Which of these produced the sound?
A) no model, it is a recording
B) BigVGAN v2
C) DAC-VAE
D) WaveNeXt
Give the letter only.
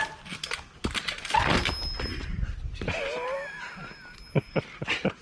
A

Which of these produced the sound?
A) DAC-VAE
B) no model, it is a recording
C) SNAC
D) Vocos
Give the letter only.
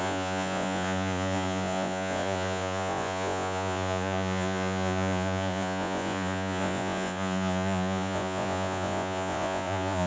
D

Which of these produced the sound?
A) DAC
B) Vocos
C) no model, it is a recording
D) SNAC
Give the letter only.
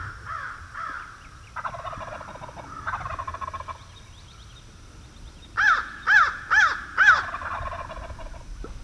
C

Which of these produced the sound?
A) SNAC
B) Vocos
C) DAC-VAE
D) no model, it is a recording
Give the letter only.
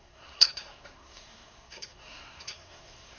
A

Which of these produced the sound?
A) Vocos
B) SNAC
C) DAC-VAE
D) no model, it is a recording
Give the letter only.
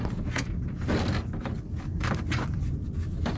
D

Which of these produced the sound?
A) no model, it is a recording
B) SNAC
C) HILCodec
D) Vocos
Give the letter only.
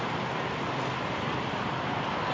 A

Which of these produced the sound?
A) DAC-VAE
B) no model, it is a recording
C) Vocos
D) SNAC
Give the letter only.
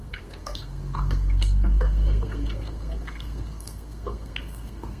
D